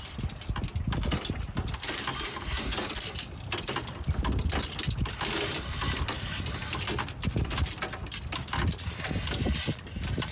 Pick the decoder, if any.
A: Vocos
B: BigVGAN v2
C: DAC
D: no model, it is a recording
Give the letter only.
D